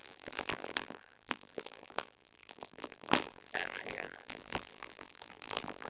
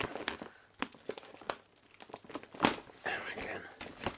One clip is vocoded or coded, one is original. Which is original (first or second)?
second